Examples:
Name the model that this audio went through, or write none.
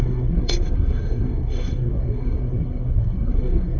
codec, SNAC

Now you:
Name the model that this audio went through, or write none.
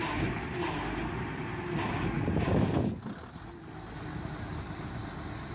none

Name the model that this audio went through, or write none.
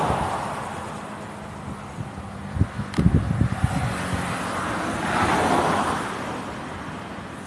none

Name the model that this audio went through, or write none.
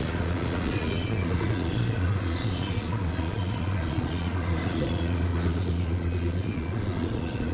vocoder, Vocos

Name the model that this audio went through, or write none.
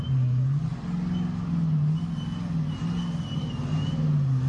none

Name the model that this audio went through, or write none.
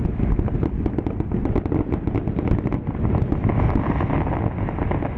none